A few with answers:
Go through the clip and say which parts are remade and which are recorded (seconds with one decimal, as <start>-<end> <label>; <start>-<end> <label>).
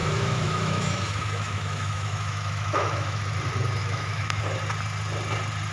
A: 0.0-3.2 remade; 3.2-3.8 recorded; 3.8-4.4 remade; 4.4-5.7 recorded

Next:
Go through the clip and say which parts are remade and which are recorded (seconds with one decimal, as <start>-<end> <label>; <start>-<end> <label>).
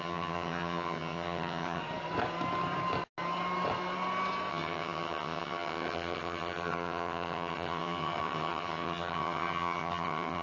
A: 0.0-1.8 remade; 1.8-4.5 recorded; 4.5-10.4 remade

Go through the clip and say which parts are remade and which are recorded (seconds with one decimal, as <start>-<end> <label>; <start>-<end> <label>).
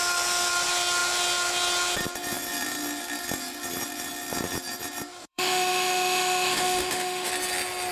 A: 0.0-5.2 recorded; 5.2-7.3 remade; 7.3-7.9 recorded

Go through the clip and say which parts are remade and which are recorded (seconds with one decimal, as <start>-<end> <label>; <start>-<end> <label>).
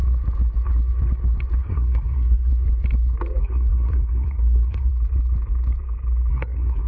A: 0.0-1.6 recorded; 1.6-2.5 remade; 2.5-3.4 recorded; 3.4-4.9 remade; 4.9-6.3 recorded; 6.3-6.9 remade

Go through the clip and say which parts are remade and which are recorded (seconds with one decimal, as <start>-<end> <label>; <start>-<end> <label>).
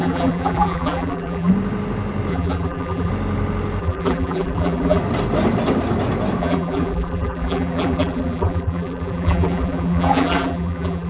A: 0.0-1.5 remade; 1.5-2.3 recorded; 2.3-3.1 remade; 3.1-3.8 recorded; 3.8-5.0 remade; 5.0-6.4 recorded; 6.4-11.1 remade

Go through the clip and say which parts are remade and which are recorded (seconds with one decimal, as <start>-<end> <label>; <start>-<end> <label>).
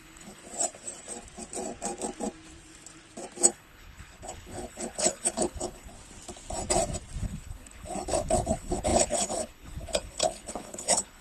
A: 0.0-0.4 remade; 0.4-3.5 recorded; 3.5-5.9 remade; 5.9-7.2 recorded; 7.2-11.2 remade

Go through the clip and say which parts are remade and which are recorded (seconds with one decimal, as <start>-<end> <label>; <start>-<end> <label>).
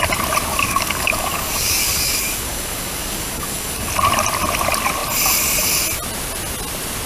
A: 0.0-0.5 recorded; 0.5-3.9 remade; 3.9-7.1 recorded